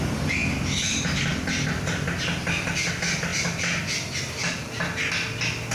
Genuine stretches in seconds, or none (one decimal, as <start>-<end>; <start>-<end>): 0.0-5.7